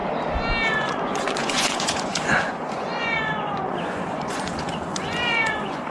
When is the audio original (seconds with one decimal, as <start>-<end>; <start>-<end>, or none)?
0.0-0.7